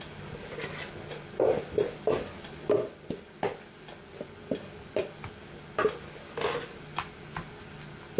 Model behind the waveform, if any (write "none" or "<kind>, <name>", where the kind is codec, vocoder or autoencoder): none